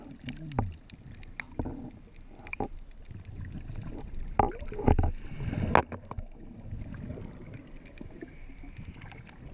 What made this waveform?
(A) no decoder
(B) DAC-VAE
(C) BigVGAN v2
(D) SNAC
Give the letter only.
A